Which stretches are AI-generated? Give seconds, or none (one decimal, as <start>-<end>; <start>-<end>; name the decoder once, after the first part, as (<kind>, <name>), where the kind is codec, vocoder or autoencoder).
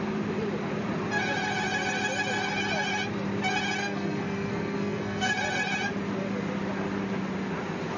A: 3.8-5.3 (codec, SNAC)